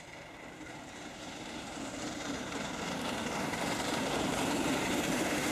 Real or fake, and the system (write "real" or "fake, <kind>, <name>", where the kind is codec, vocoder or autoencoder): fake, vocoder, BigVGAN v2